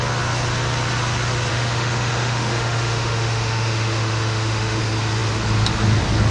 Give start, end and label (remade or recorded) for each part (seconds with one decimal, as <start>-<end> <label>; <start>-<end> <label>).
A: 0.0-1.5 recorded; 1.5-4.8 remade; 4.8-6.3 recorded